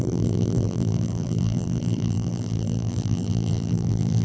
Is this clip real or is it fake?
fake